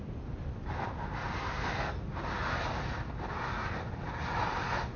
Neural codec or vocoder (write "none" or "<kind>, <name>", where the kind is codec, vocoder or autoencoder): none